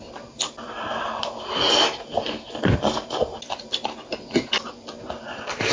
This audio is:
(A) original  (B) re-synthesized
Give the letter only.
A